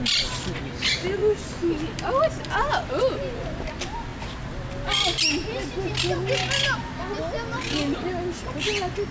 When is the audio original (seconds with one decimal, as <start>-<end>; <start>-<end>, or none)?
0.0-9.1